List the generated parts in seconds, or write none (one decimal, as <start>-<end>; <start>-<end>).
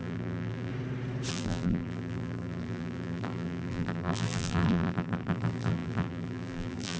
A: 0.0-0.7; 1.3-7.0